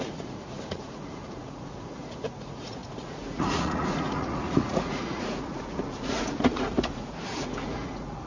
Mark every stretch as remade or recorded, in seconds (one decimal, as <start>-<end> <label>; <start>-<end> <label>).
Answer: 0.0-8.3 remade